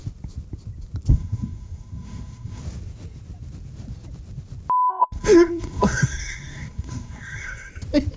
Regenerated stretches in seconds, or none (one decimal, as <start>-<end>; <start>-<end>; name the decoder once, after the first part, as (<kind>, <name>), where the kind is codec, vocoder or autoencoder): 1.1-2.6 (codec, SNAC); 4.9-7.7

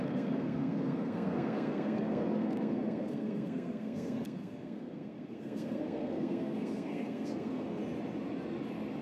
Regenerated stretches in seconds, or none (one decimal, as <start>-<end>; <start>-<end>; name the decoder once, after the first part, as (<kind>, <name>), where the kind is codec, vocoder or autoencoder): 0.0-7.8 (codec, SNAC)